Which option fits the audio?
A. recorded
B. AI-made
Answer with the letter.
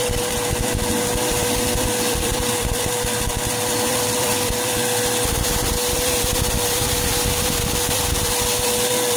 B